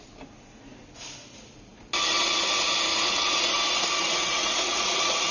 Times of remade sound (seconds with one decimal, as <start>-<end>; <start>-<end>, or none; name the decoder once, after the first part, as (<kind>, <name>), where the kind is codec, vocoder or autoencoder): 2.9-3.5 (vocoder, Vocos); 4.0-5.3